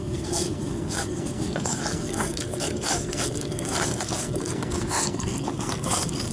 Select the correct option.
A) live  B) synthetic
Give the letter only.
B